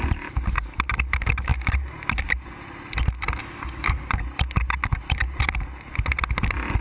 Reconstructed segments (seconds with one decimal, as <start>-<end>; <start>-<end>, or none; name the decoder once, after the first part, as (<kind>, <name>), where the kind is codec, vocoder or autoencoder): 3.4-4.1 (codec, DAC)